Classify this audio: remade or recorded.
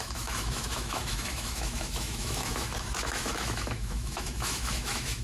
remade